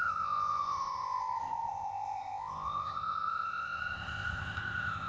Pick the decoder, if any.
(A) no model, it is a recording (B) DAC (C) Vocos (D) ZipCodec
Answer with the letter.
D